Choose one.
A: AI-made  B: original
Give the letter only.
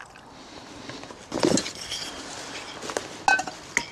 B